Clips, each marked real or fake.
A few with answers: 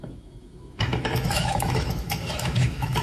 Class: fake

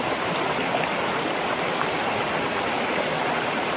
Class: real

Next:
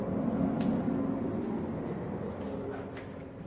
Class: real